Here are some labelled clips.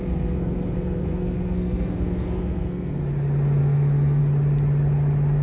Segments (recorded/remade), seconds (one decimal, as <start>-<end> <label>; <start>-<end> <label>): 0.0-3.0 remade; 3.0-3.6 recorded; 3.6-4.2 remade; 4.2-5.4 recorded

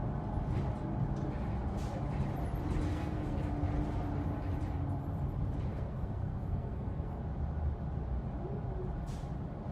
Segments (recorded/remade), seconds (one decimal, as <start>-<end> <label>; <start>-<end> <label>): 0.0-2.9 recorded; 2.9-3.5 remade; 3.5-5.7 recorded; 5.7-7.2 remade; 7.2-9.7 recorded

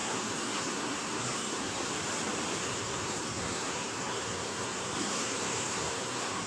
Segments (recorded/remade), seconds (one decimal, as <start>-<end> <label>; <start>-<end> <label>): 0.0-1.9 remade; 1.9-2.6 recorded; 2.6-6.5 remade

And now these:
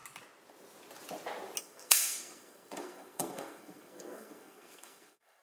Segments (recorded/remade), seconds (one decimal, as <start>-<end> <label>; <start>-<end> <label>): 0.0-1.6 recorded; 1.6-5.4 remade

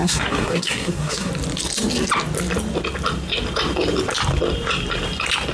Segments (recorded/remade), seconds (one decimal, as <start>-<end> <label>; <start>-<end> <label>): 0.0-1.3 remade; 1.3-5.5 recorded

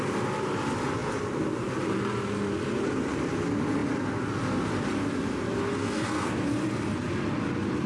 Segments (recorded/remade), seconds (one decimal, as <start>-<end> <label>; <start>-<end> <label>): 0.0-5.8 recorded; 5.8-6.3 remade; 6.3-7.9 recorded